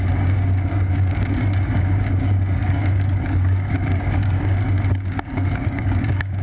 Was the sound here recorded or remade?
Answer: remade